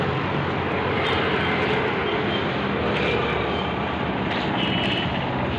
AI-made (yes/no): no